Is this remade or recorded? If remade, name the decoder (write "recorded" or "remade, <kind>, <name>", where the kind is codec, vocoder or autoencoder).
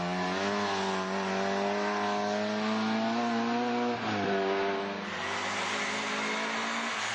recorded